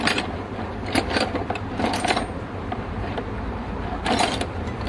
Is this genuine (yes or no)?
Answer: no